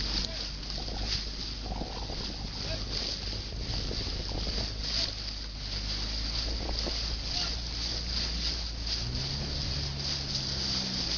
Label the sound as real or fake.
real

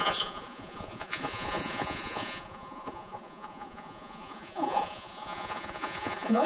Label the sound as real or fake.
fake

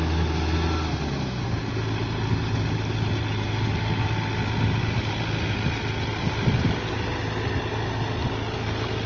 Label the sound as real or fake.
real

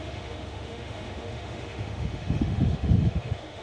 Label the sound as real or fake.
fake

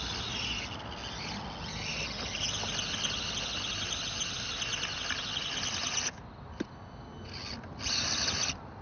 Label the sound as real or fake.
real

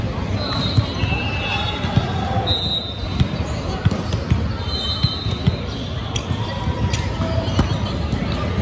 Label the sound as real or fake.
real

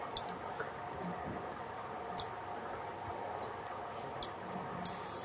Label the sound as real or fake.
real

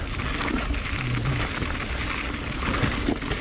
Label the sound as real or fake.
real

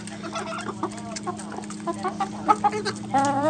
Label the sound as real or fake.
fake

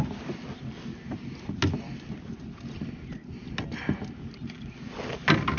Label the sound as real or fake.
real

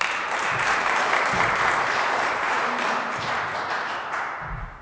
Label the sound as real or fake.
fake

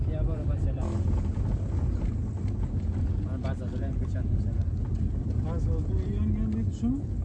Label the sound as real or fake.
real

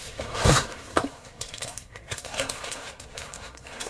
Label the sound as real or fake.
fake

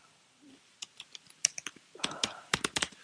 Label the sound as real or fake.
fake